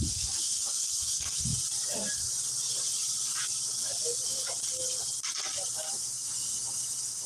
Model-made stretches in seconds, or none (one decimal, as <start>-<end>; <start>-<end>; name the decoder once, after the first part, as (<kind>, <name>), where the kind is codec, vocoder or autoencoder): 0.0-1.5 (autoencoder, DAC-VAE); 5.9-7.3